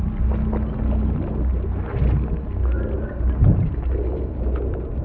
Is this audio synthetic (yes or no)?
no